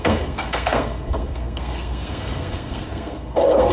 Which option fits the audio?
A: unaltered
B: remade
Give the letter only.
B